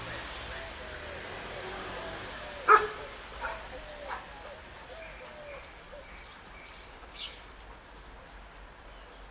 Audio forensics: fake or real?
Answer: real